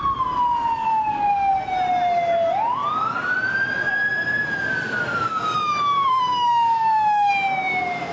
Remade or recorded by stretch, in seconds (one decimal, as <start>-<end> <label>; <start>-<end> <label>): 0.0-0.9 recorded; 0.9-1.5 remade; 1.5-5.3 recorded; 5.3-7.3 remade; 7.3-8.1 recorded